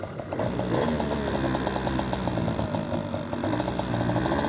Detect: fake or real real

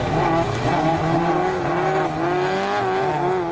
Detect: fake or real real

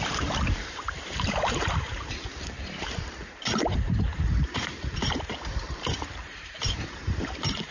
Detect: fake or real fake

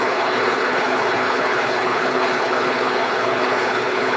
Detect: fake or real fake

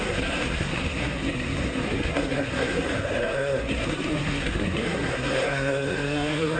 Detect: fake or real fake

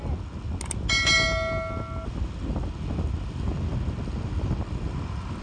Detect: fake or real real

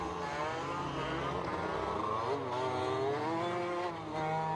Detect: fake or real real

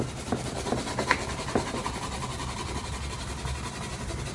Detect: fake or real real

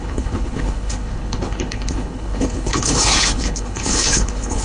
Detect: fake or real fake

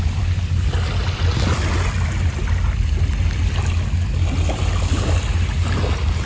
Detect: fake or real real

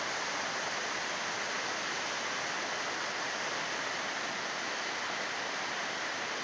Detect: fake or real real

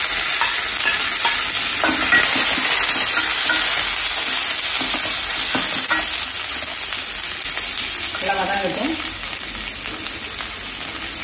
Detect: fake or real real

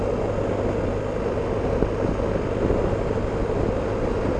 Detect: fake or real real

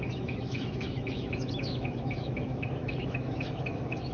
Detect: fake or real fake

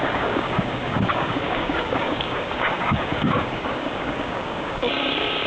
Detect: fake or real fake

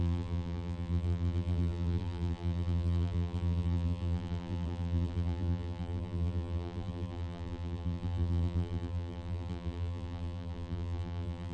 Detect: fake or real fake